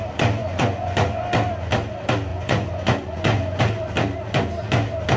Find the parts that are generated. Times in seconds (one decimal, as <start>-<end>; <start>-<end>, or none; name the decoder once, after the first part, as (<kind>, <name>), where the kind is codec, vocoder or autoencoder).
0.4-1.1 (vocoder, Vocos); 2.3-3.6